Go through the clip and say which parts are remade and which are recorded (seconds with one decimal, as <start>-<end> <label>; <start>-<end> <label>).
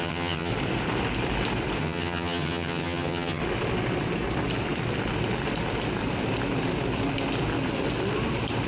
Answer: 0.0-0.5 remade; 0.5-1.8 recorded; 1.8-3.4 remade; 3.4-8.7 recorded